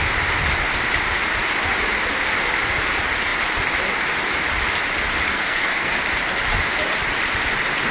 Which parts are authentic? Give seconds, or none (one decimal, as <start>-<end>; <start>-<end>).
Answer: 0.0-5.3; 6.0-7.9